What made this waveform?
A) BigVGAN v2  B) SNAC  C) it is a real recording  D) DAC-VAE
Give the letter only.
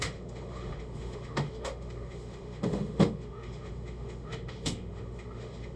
D